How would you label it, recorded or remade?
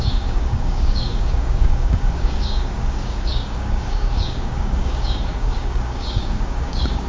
remade